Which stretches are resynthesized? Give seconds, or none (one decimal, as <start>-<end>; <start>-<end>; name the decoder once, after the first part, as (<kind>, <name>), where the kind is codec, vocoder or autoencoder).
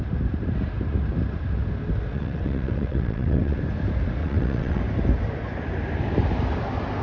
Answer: 2.1-3.6 (vocoder, WaveNeXt); 4.2-4.8